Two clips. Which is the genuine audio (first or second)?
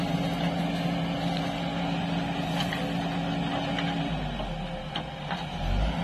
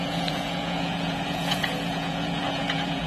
first